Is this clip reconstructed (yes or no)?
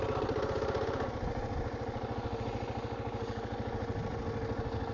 no